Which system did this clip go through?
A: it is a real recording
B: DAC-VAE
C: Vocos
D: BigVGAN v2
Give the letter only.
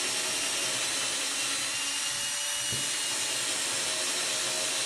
A